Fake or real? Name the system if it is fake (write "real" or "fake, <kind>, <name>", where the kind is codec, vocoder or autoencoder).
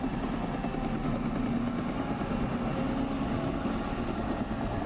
real